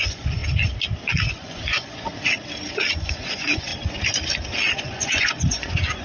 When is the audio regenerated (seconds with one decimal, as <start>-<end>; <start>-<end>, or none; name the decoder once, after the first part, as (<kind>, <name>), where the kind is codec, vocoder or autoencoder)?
0.0-0.4 (vocoder, Vocos); 1.3-2.1; 2.9-3.7; 4.8-6.0

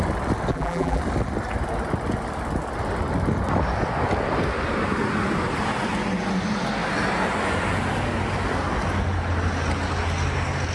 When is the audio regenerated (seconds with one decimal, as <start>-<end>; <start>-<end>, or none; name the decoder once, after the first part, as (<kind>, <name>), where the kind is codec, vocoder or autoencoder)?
0.5-1.0 (vocoder, BigVGAN v2)

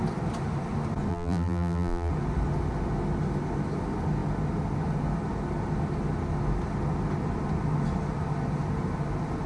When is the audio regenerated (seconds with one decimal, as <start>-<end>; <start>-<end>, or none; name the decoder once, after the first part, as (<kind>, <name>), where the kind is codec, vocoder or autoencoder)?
1.1-2.1 (vocoder, BigVGAN v2)

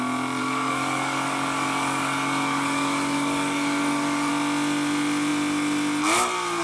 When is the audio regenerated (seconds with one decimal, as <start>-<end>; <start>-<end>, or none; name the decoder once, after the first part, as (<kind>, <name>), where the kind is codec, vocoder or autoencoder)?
0.4-4.3 (codec, DAC)

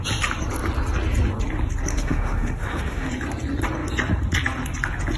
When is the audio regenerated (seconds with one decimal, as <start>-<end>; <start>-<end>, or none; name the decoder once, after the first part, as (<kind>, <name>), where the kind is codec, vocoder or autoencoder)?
1.9-3.1 (autoencoder, DAC-VAE)